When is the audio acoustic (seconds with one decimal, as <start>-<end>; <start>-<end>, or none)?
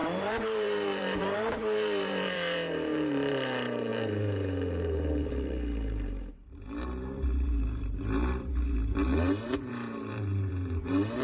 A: none